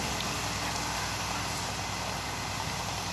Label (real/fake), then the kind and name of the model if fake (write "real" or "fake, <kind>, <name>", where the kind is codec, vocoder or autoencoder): real